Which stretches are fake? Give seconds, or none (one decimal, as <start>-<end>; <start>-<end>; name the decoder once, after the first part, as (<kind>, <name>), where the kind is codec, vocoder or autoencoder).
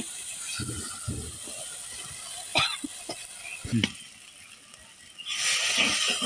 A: none